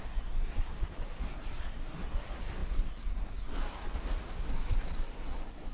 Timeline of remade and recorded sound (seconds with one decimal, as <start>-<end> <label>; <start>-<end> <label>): 0.0-3.9 remade; 3.9-4.5 recorded; 4.5-5.7 remade